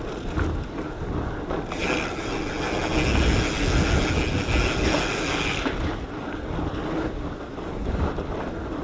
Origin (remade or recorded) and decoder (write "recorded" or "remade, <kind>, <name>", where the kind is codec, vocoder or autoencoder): recorded